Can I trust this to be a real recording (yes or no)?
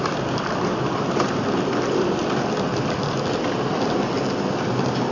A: yes